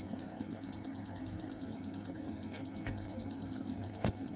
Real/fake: fake